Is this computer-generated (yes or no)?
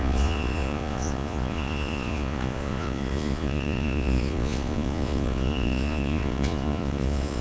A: yes